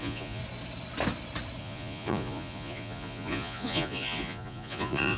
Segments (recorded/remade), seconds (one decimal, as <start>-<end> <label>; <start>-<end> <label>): 0.0-0.4 remade; 0.4-1.6 recorded; 1.6-5.2 remade